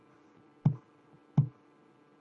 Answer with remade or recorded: recorded